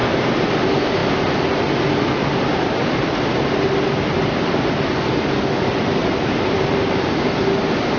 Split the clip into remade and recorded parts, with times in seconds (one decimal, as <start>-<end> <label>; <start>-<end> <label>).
0.0-6.0 recorded; 6.0-7.1 remade; 7.1-8.0 recorded